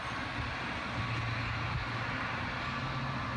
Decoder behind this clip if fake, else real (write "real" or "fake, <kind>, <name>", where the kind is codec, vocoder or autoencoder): real